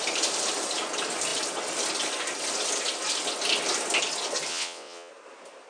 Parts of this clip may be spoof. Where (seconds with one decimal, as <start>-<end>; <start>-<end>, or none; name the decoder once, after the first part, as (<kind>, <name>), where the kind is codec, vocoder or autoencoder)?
4.5-5.1 (vocoder, WaveNeXt)